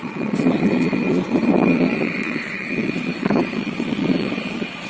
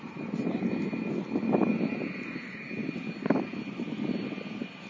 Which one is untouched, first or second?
second